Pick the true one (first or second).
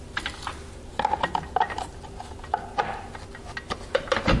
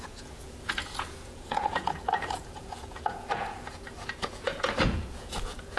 first